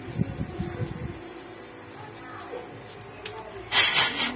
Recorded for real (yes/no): yes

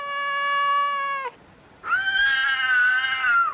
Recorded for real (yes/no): yes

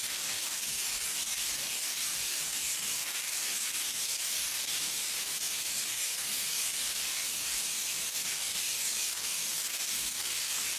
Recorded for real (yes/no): no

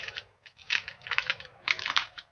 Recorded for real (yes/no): no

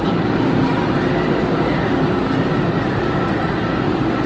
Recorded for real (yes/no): yes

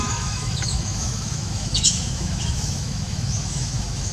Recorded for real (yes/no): no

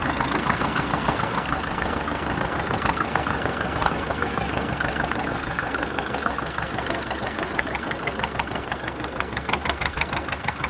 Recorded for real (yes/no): no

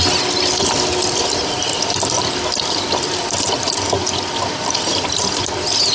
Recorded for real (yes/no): yes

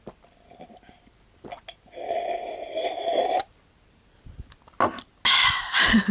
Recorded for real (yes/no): yes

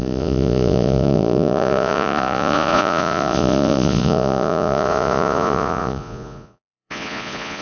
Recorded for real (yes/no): no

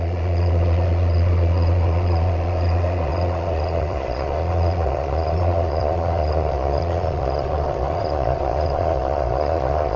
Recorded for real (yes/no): no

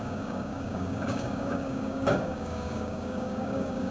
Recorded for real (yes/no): no